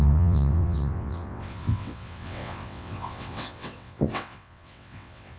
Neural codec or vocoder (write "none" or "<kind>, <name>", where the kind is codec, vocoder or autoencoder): vocoder, WaveNeXt